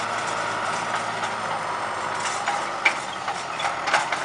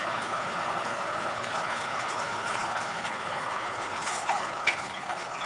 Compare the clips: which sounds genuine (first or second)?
first